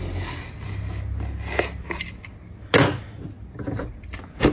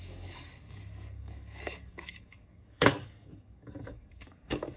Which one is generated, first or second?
second